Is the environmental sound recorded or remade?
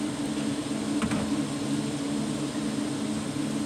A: recorded